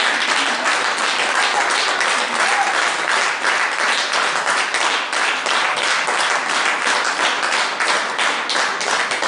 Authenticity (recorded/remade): recorded